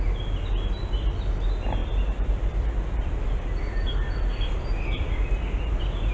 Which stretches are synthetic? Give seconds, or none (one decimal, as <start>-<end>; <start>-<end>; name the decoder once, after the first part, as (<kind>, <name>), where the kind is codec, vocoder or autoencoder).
1.8-5.3 (vocoder, BigVGAN v2)